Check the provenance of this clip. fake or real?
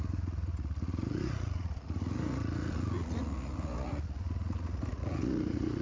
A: fake